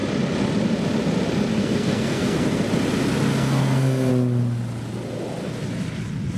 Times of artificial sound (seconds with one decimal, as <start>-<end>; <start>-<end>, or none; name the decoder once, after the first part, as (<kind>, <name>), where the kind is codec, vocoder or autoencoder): 1.5-2.6 (codec, SNAC); 3.3-4.1